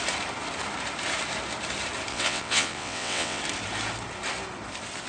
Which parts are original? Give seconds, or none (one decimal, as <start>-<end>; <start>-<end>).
0.0-2.1; 3.4-5.1